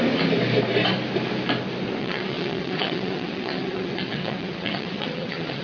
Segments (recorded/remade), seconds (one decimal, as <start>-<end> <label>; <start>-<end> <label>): 0.0-2.0 recorded; 2.0-5.6 remade